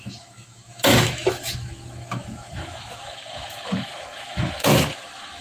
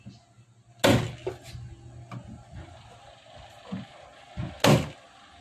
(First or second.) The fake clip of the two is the first